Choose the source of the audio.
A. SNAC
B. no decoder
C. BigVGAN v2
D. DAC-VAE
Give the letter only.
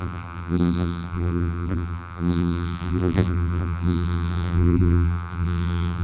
C